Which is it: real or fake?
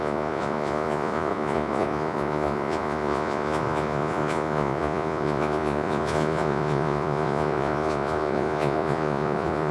fake